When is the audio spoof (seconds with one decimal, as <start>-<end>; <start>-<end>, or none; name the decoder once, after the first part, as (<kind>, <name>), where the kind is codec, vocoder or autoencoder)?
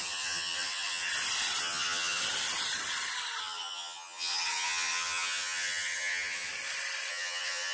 0.0-1.1 (vocoder, HiFi-GAN); 1.6-2.2; 3.4-6.5; 7.1-7.7